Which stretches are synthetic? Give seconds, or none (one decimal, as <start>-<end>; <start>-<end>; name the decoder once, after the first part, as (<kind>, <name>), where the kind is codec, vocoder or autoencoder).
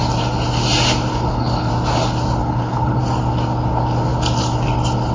1.1-1.7 (codec, HILCodec); 2.4-3.0